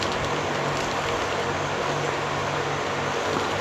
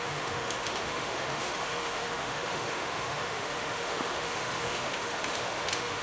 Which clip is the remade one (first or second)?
second